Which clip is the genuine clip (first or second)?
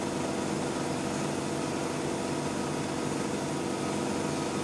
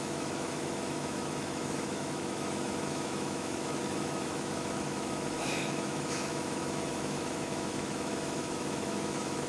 first